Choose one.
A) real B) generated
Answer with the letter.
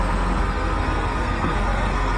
B